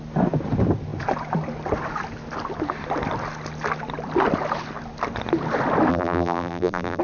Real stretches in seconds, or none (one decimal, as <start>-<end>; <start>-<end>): 0.0-5.9